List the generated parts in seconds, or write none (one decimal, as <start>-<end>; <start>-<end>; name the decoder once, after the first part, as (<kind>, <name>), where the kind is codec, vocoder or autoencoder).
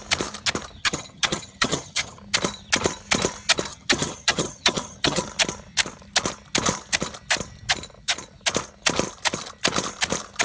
0.8-2.2 (vocoder, HiFi-GAN); 3.7-5.2